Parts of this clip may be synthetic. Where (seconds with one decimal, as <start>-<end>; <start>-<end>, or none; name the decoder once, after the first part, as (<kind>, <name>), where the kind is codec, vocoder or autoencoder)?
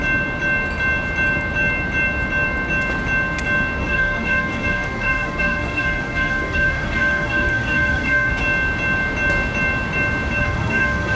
3.8-8.3 (codec, SNAC); 10.4-11.2